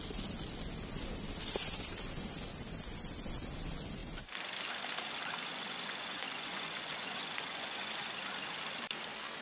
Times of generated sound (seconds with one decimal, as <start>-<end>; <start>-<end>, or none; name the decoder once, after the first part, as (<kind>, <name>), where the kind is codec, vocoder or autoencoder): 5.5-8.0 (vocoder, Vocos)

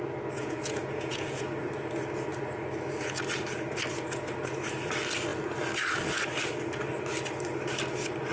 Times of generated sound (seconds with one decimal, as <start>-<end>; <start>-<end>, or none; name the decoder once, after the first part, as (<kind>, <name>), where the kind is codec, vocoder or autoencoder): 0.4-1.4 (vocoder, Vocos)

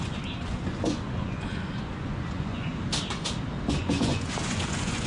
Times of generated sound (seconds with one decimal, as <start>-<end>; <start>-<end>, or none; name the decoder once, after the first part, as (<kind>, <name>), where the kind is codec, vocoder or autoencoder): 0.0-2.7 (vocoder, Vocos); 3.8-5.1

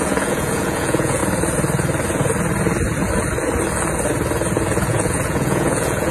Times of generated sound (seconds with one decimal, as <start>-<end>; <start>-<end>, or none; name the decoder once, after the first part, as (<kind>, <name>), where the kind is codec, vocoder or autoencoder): 0.0-1.2 (vocoder, Vocos); 4.9-6.1

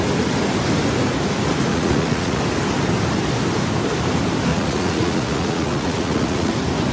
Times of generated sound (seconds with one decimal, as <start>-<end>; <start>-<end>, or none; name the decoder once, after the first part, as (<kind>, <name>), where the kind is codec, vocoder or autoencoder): 1.7-2.4 (vocoder, Vocos); 4.5-6.5